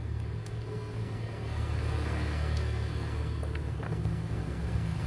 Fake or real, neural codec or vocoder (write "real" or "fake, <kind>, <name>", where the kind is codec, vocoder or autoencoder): fake, codec, SNAC